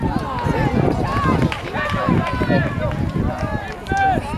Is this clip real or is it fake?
real